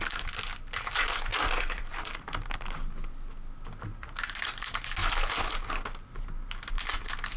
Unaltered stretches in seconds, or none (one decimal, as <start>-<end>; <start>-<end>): 0.0-1.3; 1.8-7.4